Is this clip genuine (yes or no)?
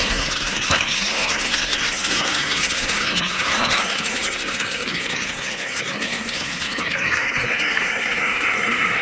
no